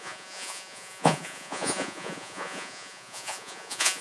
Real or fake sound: fake